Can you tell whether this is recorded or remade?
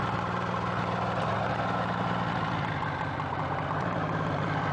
recorded